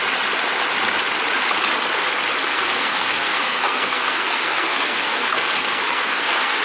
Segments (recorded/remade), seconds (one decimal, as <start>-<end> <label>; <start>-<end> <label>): 0.0-2.5 recorded; 2.5-6.6 remade